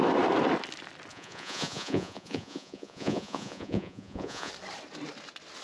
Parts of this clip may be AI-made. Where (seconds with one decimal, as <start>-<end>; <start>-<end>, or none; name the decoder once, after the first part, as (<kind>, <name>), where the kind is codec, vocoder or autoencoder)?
1.1-4.5 (vocoder, Vocos)